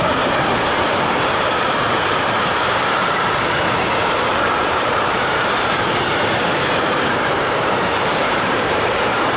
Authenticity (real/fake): fake